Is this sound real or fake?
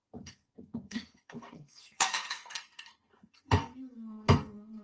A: fake